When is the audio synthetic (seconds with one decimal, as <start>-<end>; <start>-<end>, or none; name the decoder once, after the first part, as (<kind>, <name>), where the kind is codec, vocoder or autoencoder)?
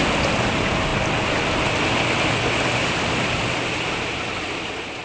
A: none